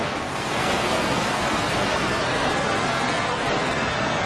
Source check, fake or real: fake